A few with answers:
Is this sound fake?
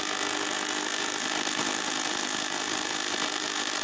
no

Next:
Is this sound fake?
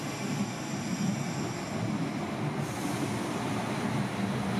no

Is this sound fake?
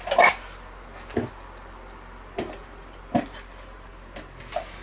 no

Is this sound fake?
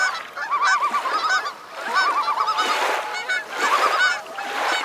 no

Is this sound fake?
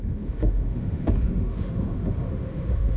yes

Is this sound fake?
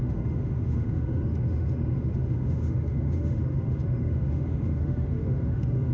yes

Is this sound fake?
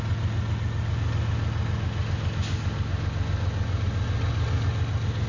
no